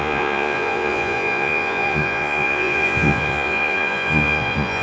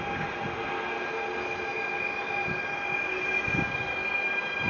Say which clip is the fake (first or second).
first